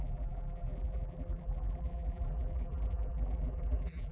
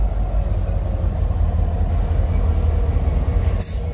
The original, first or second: second